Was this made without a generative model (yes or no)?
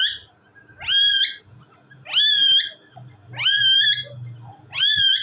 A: yes